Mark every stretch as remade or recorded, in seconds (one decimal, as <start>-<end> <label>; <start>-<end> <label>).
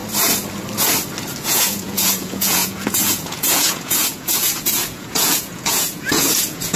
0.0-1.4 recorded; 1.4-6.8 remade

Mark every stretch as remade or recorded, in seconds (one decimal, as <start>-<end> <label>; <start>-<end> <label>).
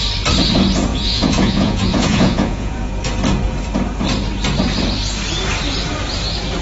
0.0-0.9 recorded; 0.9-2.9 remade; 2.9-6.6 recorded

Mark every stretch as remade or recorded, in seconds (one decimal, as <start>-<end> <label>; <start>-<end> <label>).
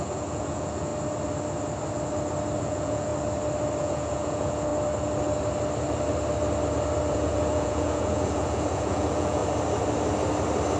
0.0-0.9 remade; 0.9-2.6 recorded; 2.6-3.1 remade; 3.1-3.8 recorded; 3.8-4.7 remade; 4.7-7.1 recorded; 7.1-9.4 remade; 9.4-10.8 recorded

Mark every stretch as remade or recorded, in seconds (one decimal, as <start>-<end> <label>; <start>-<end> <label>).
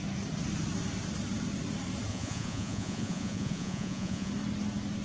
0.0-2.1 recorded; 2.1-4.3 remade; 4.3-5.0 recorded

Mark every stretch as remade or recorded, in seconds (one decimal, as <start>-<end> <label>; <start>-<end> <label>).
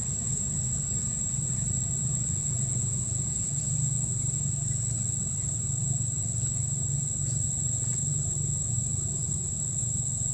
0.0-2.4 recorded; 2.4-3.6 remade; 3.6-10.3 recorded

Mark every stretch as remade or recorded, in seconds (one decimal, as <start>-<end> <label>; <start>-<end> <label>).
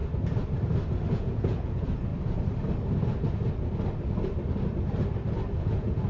0.0-1.1 recorded; 1.1-2.1 remade; 2.1-5.5 recorded; 5.5-6.1 remade